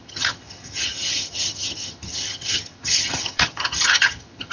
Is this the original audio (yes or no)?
no